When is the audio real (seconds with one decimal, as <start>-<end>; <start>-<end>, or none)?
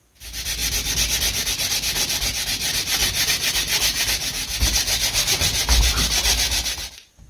0.0-7.3